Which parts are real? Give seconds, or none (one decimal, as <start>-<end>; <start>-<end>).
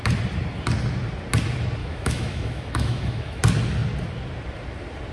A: 0.0-1.8; 3.4-5.1